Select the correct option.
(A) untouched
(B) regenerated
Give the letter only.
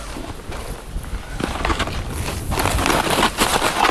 A